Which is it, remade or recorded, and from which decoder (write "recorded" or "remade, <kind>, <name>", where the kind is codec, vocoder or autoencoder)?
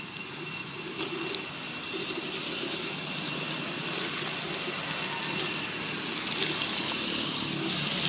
recorded